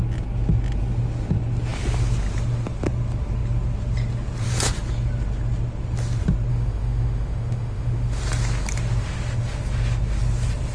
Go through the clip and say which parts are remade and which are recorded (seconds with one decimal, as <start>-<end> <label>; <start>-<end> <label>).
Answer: 0.0-6.5 recorded; 6.5-8.2 remade; 8.2-10.7 recorded